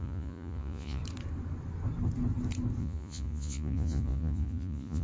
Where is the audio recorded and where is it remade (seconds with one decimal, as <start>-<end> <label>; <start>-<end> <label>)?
0.0-1.0 remade; 1.0-2.8 recorded; 2.8-5.0 remade